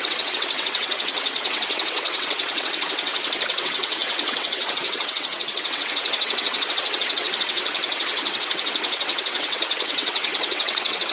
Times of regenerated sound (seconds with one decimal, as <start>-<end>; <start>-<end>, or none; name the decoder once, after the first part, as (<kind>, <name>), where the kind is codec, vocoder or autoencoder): 0.0-11.1 (vocoder, WaveNeXt)